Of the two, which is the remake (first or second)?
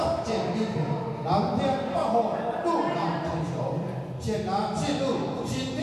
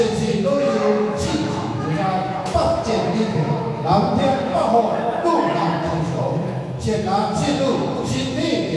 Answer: second